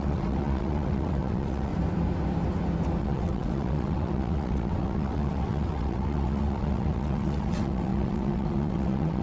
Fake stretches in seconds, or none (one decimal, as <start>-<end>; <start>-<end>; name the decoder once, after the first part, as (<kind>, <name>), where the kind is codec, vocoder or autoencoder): 0.0-1.7 (vocoder, WaveNeXt); 3.0-9.2